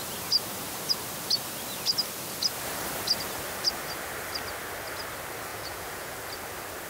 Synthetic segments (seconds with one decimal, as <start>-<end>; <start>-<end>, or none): 5.5-6.1